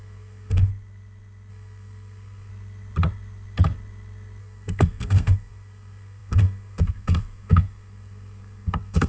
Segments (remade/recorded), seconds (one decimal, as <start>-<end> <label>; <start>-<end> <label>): 0.0-0.7 remade; 0.7-1.5 recorded; 1.5-2.5 remade; 2.5-4.4 recorded; 4.4-9.1 remade